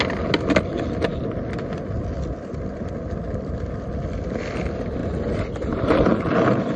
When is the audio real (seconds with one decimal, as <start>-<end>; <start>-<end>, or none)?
0.0-5.0